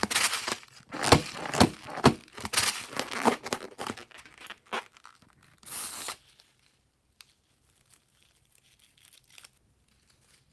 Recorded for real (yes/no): yes